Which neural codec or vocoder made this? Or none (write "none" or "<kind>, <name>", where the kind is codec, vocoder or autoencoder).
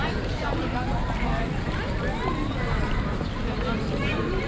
none